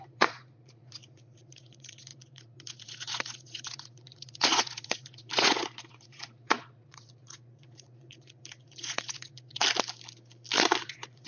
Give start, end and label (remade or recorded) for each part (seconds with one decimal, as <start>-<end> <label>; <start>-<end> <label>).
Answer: 0.0-9.6 remade; 9.6-10.8 recorded; 10.8-11.3 remade